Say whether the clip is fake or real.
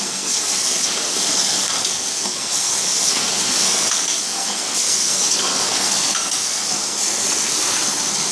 fake